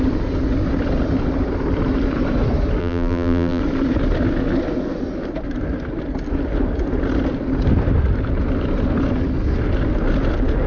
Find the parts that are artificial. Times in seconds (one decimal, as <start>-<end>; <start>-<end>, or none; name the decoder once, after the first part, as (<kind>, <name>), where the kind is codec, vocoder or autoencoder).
2.8-3.6 (vocoder, BigVGAN v2)